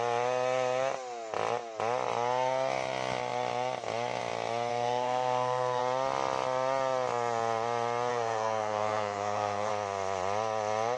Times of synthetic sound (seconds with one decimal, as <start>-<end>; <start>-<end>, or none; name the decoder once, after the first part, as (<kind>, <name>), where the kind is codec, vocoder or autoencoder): 4.7-5.8 (codec, SNAC); 8.1-9.7

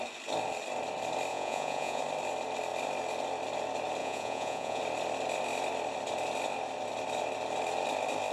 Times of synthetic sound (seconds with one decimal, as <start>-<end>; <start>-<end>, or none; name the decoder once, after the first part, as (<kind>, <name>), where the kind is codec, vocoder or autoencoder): 1.3-2.0 (vocoder, Vocos); 4.0-4.8

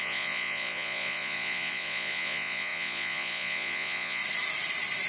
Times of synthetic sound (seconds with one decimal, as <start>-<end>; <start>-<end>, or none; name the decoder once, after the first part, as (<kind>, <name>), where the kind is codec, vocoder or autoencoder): 0.0-4.2 (vocoder, Vocos)